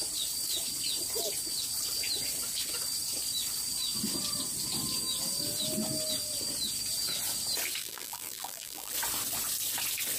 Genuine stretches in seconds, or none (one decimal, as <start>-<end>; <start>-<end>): 0.0-7.8; 8.9-10.2